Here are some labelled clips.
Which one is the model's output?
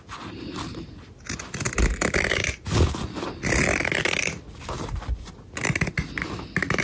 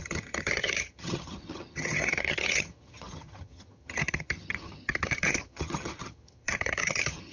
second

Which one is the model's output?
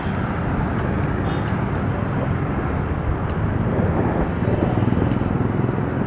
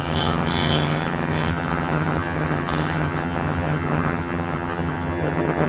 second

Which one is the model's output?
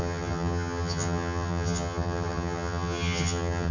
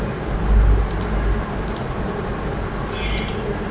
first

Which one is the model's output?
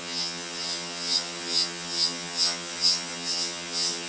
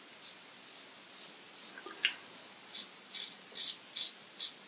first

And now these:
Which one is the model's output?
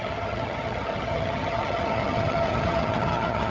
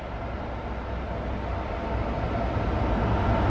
first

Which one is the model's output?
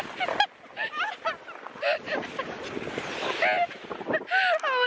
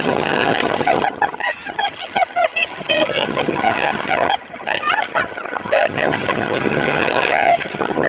second